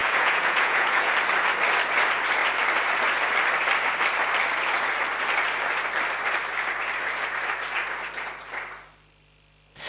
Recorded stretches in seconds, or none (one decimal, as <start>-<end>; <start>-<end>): 1.1-9.9